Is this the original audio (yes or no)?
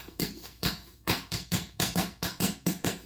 no